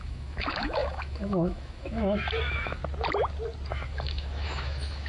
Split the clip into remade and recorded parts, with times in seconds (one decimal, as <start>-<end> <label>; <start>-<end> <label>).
0.0-2.8 remade; 2.8-3.7 recorded; 3.7-5.1 remade